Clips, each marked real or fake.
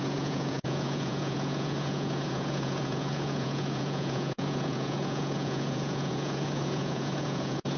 fake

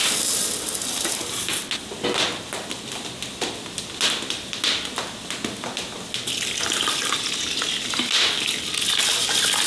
real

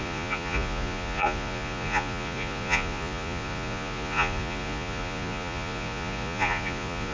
fake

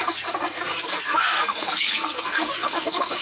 fake